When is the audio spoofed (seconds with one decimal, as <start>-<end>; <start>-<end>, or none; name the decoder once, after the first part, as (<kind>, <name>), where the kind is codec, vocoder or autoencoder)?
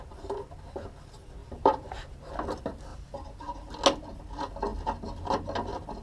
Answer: 1.4-2.3 (vocoder, BigVGAN v2); 2.9-3.7